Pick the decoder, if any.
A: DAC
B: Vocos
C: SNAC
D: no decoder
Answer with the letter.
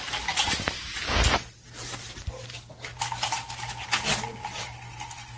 D